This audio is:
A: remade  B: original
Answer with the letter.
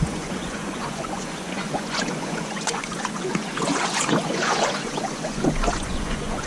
A